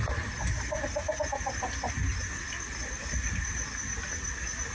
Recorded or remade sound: recorded